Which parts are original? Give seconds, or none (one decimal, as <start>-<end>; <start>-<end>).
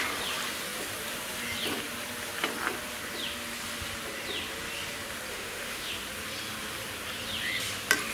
0.0-5.3; 5.9-8.1